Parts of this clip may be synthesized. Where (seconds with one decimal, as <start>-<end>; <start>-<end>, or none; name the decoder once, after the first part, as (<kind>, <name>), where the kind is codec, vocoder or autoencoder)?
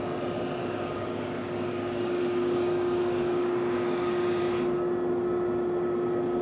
0.6-4.4 (codec, DAC)